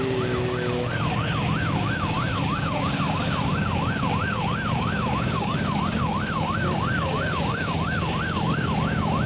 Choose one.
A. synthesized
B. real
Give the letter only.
A